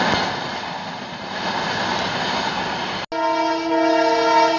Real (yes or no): yes